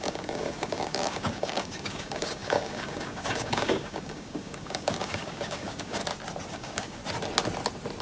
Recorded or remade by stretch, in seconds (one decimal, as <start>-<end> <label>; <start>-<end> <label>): 0.0-6.0 remade; 6.0-6.5 recorded; 6.5-7.0 remade; 7.0-8.0 recorded